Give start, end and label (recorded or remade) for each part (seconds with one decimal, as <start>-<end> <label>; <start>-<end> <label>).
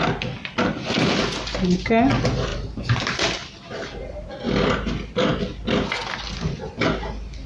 0.0-2.5 recorded; 2.5-4.3 remade; 4.3-7.5 recorded